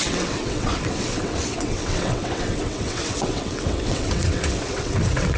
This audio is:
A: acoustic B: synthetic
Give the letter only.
B